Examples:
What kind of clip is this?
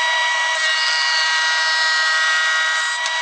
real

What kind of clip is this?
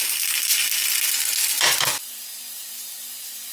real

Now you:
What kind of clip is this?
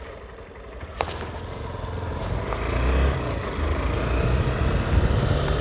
real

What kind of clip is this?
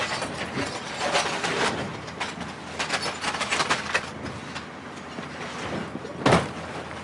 real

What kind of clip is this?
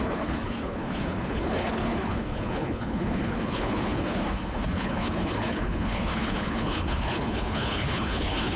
fake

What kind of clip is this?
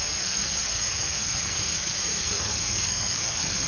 fake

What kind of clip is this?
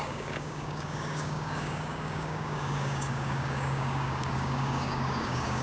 fake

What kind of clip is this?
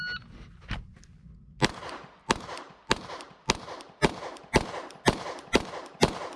real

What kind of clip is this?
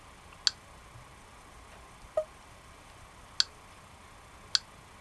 real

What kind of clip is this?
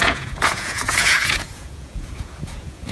fake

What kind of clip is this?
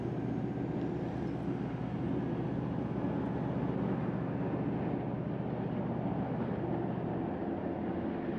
real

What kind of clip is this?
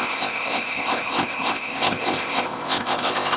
fake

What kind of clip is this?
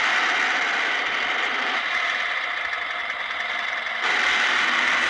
real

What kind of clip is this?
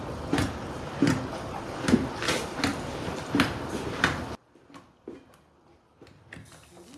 real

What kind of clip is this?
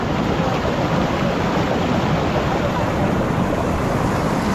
real